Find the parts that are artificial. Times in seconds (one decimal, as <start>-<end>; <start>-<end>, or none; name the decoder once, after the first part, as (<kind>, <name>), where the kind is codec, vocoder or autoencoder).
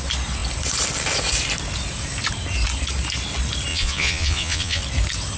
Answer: 3.7-4.8 (vocoder, Vocos)